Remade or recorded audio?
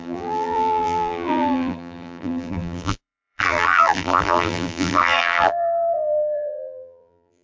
remade